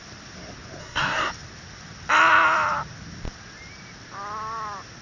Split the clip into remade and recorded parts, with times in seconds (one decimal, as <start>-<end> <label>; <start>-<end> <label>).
0.0-0.8 recorded; 0.8-1.3 remade; 1.3-5.0 recorded